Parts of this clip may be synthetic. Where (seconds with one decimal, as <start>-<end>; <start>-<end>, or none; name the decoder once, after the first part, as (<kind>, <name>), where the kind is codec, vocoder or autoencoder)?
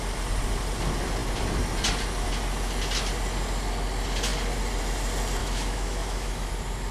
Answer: 5.4-6.5 (autoencoder, DAC-VAE)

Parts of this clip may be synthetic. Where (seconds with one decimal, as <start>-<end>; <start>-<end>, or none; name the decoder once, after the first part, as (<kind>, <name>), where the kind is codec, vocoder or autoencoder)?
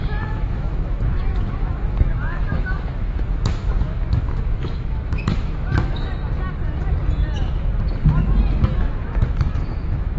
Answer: 0.0-6.1 (autoencoder, DAC-VAE); 8.7-10.2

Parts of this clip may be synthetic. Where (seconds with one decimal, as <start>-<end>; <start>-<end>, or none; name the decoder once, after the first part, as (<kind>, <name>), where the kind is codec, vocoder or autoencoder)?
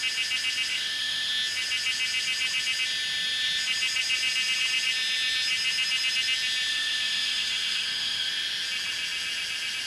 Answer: 0.7-1.3 (autoencoder, DAC-VAE); 6.7-8.3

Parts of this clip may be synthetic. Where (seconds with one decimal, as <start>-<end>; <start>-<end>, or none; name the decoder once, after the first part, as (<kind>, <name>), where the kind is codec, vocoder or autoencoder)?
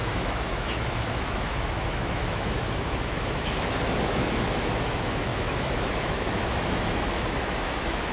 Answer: 0.0-8.1 (autoencoder, DAC-VAE)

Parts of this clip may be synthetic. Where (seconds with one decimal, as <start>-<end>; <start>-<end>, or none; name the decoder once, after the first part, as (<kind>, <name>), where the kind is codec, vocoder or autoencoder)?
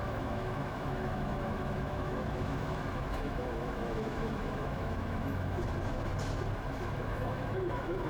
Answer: 0.0-6.1 (autoencoder, DAC-VAE); 6.7-8.1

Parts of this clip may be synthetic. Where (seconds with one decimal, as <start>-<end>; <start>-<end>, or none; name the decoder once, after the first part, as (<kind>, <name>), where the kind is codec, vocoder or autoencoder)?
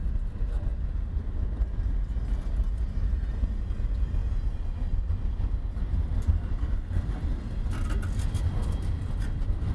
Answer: none